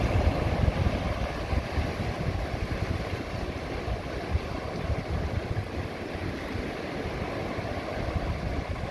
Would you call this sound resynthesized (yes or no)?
no